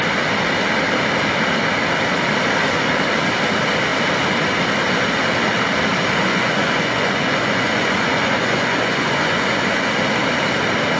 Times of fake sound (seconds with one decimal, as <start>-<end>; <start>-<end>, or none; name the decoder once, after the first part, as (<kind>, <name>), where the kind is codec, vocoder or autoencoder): 6.3-9.9 (vocoder, Vocos)